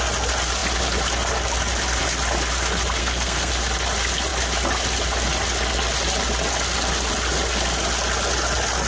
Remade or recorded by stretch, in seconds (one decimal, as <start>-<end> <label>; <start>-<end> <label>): 0.0-3.0 recorded; 3.0-3.5 remade; 3.5-8.9 recorded